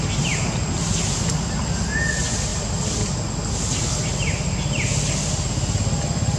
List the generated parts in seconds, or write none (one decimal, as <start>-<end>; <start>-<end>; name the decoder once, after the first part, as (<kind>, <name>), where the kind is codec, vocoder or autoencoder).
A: none